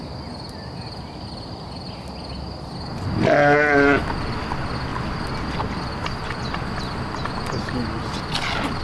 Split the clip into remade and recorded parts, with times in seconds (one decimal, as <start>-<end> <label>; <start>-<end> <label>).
0.0-8.8 recorded